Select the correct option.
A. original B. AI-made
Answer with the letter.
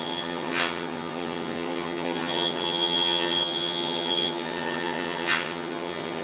B